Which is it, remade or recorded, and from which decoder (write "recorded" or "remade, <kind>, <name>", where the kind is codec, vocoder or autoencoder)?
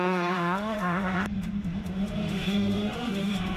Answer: remade, autoencoder, DAC-VAE